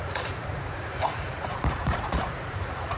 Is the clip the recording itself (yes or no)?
no